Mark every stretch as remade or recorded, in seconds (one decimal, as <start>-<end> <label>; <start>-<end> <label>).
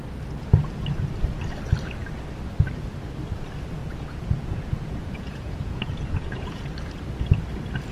0.0-3.8 recorded; 3.8-6.7 remade; 6.7-7.9 recorded